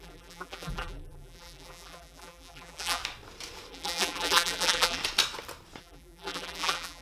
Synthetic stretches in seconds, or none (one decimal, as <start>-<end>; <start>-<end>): 0.0-3.0; 3.7-5.0; 5.8-7.0